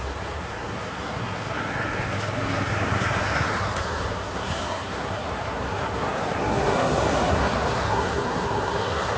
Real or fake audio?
fake